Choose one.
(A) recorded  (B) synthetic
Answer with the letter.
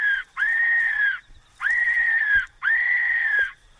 A